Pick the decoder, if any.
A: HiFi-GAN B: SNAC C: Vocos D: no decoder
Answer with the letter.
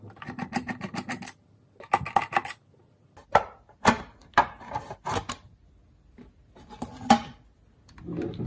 D